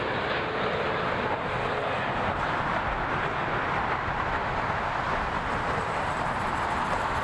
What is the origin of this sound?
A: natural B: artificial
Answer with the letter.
A